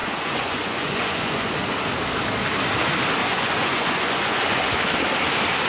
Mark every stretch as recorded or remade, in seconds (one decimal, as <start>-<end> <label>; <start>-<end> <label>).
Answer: 0.0-1.5 remade; 1.5-3.2 recorded; 3.2-4.8 remade; 4.8-5.7 recorded

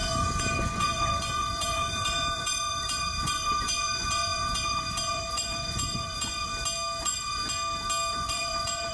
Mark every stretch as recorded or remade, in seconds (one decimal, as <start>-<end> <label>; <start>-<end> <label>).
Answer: 0.0-6.5 remade; 6.5-7.0 recorded; 7.0-7.4 remade; 7.4-8.1 recorded; 8.1-8.9 remade

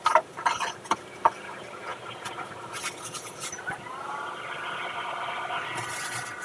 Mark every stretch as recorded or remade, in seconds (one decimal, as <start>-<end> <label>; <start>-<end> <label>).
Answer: 0.0-6.4 recorded

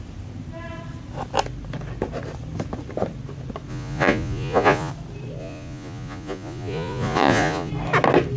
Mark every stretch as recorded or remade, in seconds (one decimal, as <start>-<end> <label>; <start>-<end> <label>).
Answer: 0.0-3.7 recorded; 3.7-4.9 remade; 4.9-5.4 recorded; 5.4-7.7 remade; 7.7-8.4 recorded

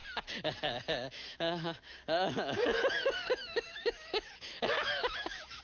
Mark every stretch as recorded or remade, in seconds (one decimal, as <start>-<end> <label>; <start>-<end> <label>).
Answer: 0.0-1.1 recorded; 1.1-5.6 remade

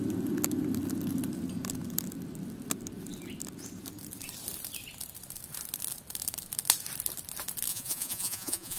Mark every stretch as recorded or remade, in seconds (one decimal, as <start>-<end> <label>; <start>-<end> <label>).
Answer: 0.0-7.7 recorded; 7.7-8.8 remade

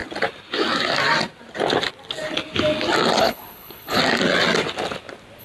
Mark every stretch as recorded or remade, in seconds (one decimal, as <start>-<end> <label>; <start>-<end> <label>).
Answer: 0.0-3.2 recorded; 3.2-4.0 remade; 4.0-5.4 recorded